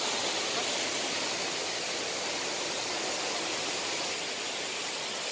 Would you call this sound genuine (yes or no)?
yes